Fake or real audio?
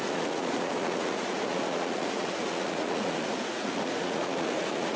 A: fake